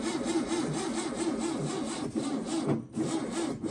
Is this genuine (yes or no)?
yes